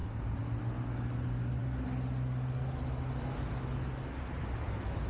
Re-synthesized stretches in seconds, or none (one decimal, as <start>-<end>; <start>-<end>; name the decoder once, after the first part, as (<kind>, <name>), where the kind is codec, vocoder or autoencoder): none